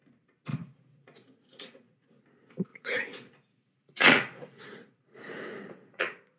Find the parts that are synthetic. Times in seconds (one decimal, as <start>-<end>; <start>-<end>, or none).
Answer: 0.5-2.2; 2.7-6.4